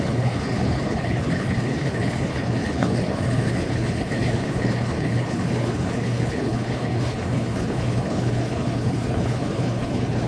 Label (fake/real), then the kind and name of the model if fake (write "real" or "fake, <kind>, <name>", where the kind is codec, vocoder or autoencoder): fake, codec, HILCodec